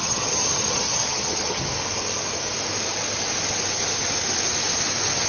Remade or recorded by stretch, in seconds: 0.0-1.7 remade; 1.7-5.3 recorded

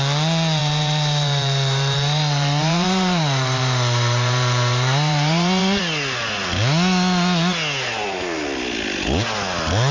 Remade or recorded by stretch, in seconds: 0.0-0.6 recorded; 0.6-5.8 remade; 5.8-9.9 recorded